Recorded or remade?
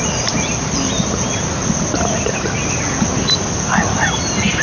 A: recorded